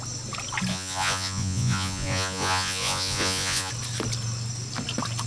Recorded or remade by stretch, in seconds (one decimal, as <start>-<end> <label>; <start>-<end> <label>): 0.0-0.7 recorded; 0.7-3.7 remade; 3.7-5.3 recorded